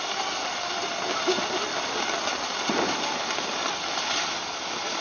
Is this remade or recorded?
recorded